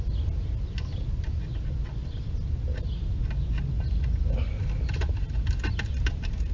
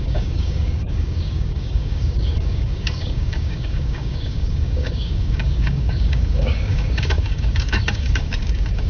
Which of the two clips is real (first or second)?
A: first